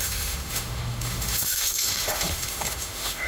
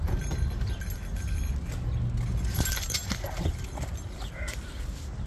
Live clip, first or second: second